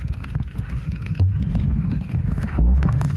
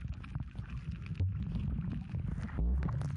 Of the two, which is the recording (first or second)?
second